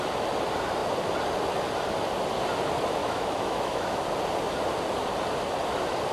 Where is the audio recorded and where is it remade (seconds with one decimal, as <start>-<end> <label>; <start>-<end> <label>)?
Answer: 0.0-3.0 recorded; 3.0-4.0 remade; 4.0-6.1 recorded